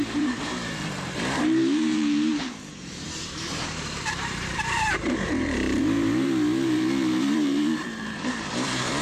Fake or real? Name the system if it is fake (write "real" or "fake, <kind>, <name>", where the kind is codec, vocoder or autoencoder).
fake, vocoder, BigVGAN v2